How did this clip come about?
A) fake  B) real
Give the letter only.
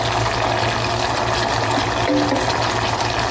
B